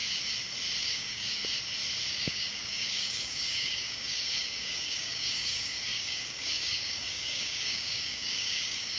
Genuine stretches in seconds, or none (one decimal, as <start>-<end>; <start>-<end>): 0.0-0.8; 1.4-2.1